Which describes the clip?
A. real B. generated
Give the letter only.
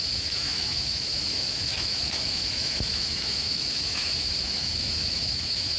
B